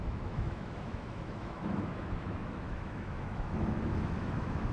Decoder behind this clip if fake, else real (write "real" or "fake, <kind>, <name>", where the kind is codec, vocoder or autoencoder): fake, autoencoder, DAC-VAE